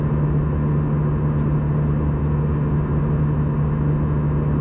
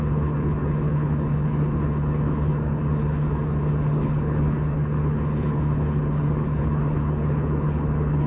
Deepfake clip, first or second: second